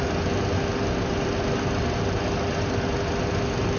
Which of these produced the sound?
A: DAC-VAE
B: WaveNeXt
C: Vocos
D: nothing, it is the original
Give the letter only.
D